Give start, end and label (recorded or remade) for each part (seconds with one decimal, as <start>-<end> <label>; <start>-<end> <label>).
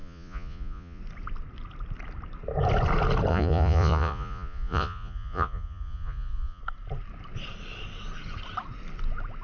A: 0.0-1.0 remade; 1.0-3.3 recorded; 3.3-6.6 remade; 6.6-9.4 recorded